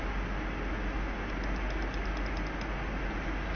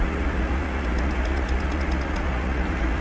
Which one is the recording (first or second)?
first